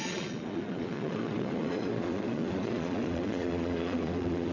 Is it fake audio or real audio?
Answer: fake